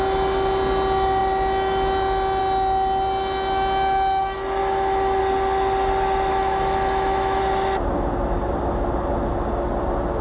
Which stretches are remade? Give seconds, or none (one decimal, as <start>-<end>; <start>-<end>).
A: 4.6-5.2; 6.3-7.4